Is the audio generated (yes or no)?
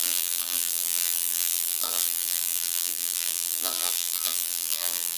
yes